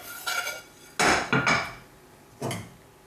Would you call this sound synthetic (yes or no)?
no